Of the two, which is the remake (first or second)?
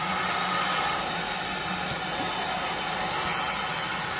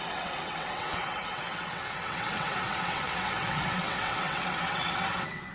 second